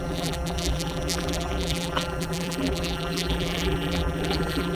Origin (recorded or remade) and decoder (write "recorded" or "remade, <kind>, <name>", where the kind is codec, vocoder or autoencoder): remade, vocoder, BigVGAN v2